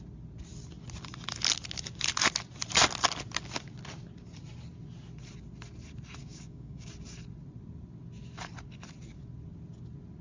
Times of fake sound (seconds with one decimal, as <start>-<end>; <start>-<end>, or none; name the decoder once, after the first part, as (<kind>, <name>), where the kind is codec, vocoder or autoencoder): 6.2-6.9 (codec, DAC)